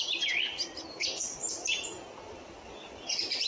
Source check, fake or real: fake